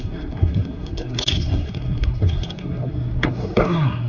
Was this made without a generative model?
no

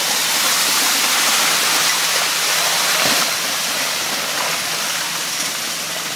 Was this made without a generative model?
yes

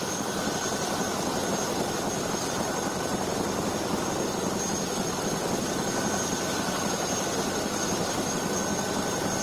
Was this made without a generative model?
yes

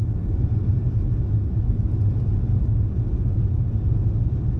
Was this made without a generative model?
yes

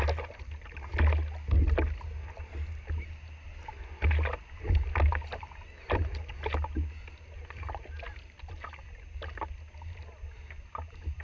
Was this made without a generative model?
yes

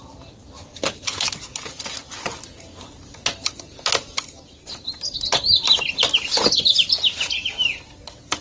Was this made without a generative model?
yes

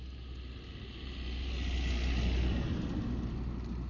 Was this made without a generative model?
yes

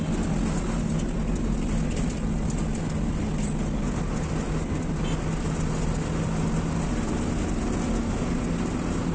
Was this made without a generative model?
yes